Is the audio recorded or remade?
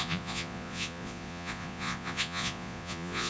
remade